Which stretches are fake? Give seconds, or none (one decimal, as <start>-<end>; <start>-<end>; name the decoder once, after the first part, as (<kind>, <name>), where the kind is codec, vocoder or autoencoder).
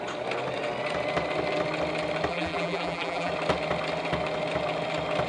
2.3-3.3 (vocoder, BigVGAN v2)